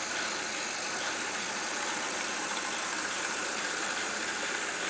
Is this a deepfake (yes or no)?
yes